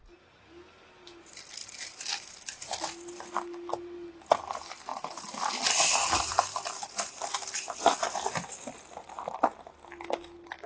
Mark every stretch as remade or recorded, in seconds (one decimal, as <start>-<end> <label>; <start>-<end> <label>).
0.0-10.7 recorded